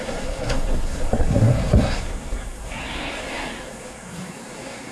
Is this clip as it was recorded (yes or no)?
no